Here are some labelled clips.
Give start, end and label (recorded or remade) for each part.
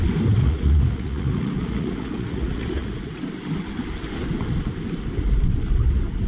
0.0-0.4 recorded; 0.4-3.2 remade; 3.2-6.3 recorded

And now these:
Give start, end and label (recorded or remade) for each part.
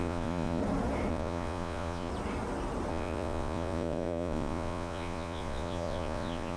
0.0-0.6 remade; 0.6-1.1 recorded; 1.1-2.1 remade; 2.1-2.9 recorded; 2.9-6.6 remade